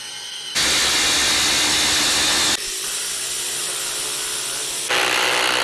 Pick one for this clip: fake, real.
real